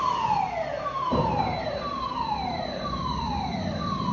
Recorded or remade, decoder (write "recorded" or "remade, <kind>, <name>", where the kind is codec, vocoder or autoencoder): recorded